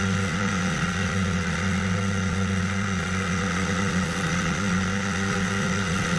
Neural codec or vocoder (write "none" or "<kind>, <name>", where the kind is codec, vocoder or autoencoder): vocoder, Vocos